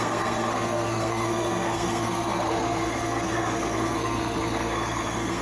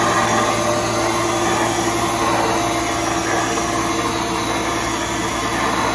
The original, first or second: second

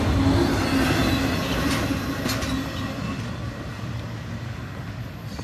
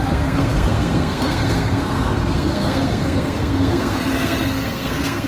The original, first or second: first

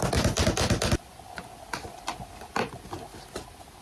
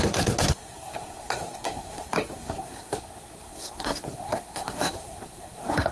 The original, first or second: first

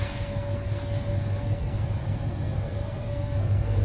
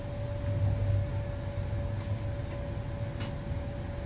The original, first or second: second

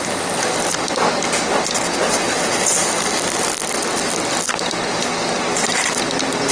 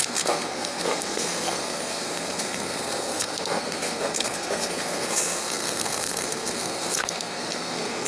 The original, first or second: first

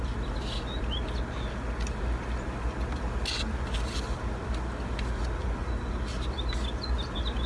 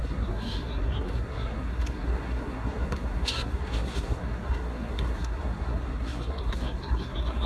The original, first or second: first